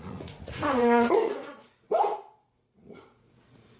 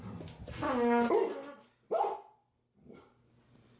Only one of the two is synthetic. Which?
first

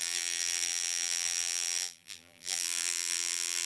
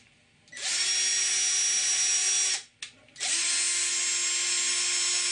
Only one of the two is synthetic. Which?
first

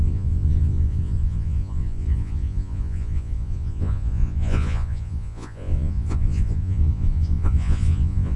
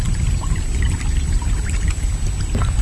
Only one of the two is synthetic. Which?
first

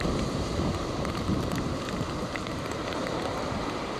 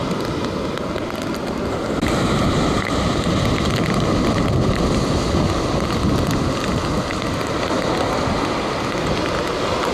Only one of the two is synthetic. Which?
first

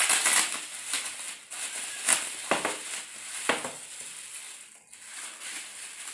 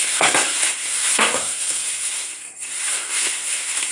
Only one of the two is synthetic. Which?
second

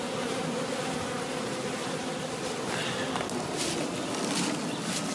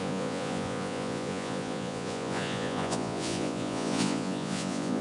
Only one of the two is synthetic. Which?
second